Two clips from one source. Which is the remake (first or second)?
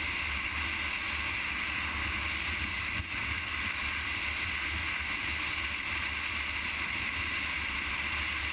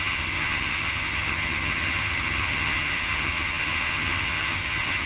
second